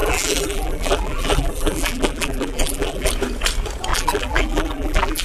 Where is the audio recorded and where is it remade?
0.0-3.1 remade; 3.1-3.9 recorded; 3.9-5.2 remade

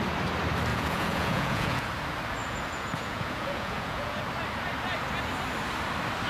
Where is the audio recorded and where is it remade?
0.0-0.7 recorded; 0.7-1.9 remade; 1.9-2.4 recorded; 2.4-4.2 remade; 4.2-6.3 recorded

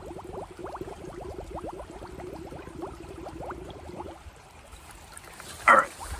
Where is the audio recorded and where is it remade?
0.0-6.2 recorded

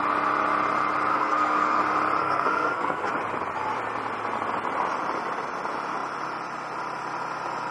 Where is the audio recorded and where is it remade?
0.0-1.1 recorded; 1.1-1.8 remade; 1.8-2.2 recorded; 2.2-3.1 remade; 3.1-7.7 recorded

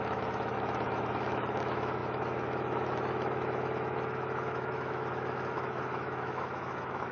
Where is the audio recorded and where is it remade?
0.0-7.1 remade

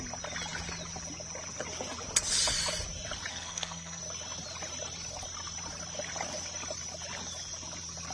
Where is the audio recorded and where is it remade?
0.0-3.3 recorded; 3.3-4.0 remade; 4.0-8.1 recorded

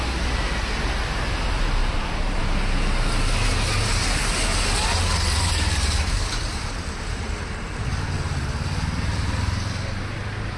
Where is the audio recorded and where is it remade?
0.0-1.8 recorded; 1.8-2.4 remade; 2.4-5.1 recorded; 5.1-7.3 remade; 7.3-10.6 recorded